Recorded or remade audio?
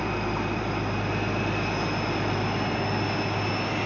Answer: recorded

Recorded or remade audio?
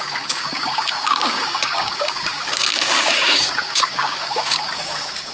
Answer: remade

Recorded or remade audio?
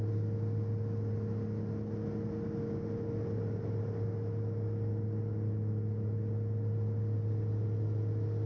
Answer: recorded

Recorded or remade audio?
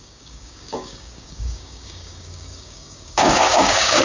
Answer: remade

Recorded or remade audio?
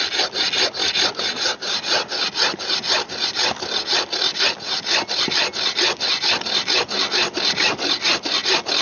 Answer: recorded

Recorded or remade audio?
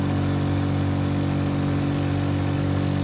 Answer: recorded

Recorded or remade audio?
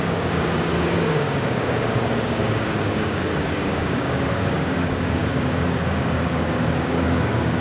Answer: remade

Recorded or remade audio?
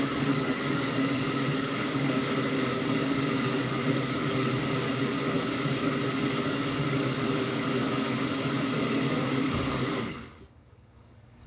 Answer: remade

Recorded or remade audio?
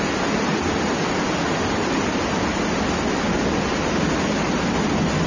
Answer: recorded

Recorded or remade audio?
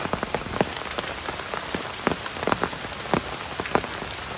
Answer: recorded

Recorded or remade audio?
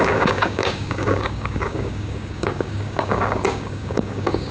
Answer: remade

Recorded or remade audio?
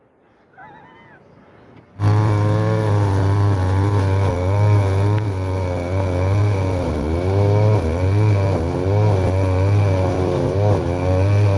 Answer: recorded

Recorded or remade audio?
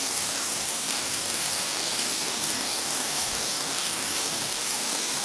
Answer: remade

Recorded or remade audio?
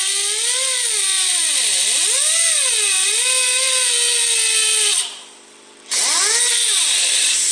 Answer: recorded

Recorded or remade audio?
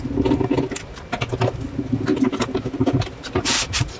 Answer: recorded